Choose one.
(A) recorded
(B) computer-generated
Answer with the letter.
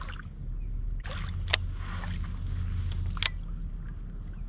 A